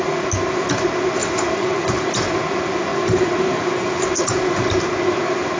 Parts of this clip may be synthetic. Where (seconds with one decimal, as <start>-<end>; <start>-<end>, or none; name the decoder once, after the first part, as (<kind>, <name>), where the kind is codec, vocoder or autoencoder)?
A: 1.2-2.4 (vocoder, BigVGAN v2); 2.9-4.3